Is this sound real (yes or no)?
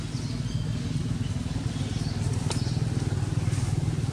yes